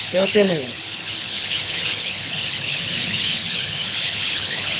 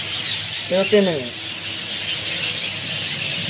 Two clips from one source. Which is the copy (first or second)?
first